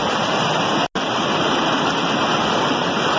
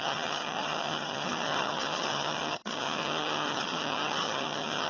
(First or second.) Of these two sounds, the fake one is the second